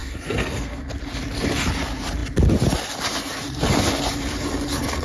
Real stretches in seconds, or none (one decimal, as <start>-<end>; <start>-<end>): 0.9-5.0